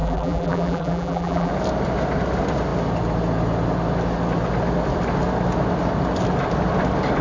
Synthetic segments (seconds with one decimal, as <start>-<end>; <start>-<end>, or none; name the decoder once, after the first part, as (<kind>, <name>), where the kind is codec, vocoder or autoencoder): 0.0-1.5 (vocoder, BigVGAN v2)